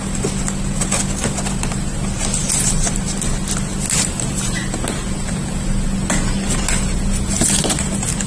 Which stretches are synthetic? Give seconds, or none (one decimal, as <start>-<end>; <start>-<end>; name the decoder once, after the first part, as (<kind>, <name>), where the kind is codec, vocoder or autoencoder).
none